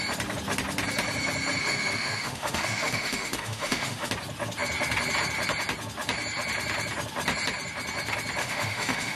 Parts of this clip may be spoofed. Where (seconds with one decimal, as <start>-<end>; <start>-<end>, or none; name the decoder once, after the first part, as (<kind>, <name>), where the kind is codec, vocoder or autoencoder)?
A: 1.6-4.1 (autoencoder, DAC-VAE); 8.4-9.2